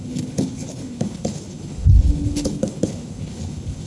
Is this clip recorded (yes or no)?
no